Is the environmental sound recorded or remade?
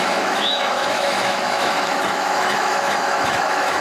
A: remade